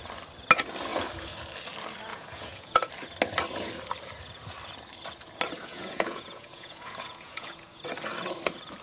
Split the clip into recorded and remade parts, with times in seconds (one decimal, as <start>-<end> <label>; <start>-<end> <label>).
0.0-2.1 recorded; 2.1-2.9 remade; 2.9-5.6 recorded; 5.6-7.8 remade; 7.8-8.8 recorded

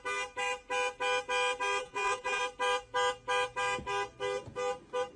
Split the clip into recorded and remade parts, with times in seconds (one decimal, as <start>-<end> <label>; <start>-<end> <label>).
0.0-1.8 recorded; 1.8-2.4 remade; 2.4-5.2 recorded

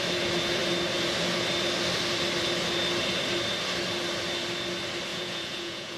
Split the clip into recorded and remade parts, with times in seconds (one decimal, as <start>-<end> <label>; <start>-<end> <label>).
0.0-5.1 recorded; 5.1-6.0 remade

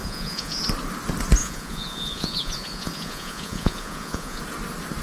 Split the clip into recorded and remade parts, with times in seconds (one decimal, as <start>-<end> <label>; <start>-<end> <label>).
0.0-0.6 remade; 0.6-1.4 recorded; 1.4-4.4 remade; 4.4-5.0 recorded